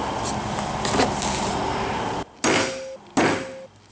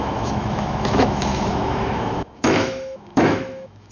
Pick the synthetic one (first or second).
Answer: second